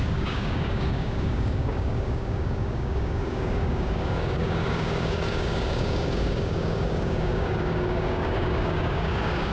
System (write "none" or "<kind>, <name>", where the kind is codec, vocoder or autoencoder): codec, DAC